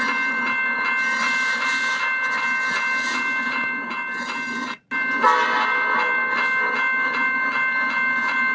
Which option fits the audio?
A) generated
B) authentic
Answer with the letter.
B